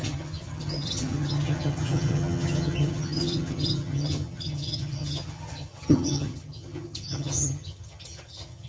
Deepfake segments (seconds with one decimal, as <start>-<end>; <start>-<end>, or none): 0.0-8.7